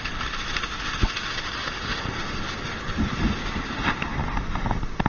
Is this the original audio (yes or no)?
yes